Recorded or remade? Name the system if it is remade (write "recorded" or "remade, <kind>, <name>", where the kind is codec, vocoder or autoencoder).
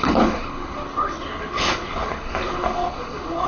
remade, codec, HILCodec